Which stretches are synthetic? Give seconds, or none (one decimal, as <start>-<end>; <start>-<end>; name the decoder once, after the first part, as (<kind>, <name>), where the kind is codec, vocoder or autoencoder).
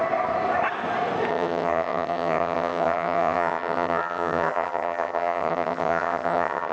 1.3-6.7 (vocoder, HiFi-GAN)